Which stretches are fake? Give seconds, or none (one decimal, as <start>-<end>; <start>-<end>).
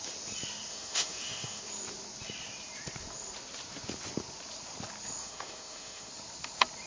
0.7-1.6; 5.2-6.1